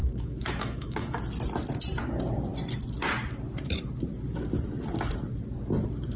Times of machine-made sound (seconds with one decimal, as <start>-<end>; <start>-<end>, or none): 0.0-1.2